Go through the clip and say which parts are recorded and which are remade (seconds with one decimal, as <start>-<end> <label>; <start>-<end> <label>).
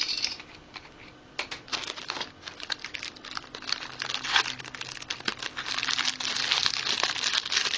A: 0.0-7.8 recorded